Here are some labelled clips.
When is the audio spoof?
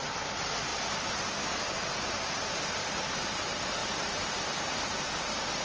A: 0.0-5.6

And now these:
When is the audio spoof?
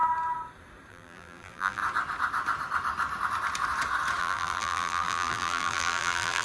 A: 0.9-1.8; 4.2-6.4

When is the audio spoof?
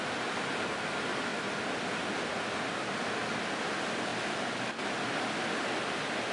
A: 1.3-1.9; 2.3-3.3; 4.1-4.8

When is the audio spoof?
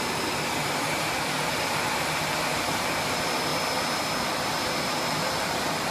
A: 0.0-3.5